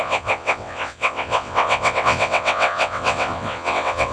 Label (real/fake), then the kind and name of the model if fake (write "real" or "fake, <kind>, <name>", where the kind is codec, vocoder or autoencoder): fake, vocoder, WaveNeXt